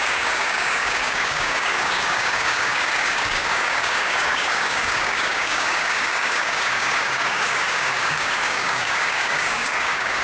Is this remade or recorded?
remade